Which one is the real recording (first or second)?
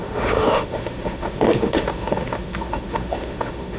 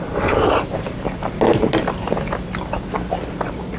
second